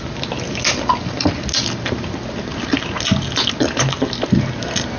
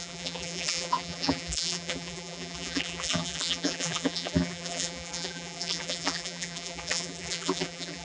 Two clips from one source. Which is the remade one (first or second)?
second